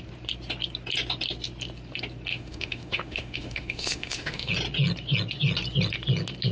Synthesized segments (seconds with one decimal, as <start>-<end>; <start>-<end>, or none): 2.3-4.5